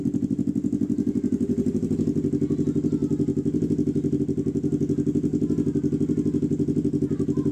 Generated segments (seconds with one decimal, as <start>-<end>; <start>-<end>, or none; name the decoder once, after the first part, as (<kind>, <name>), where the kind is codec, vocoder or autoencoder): none